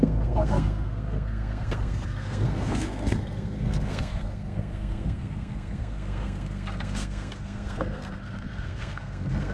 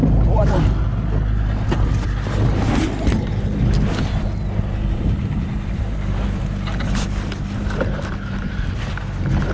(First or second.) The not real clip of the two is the first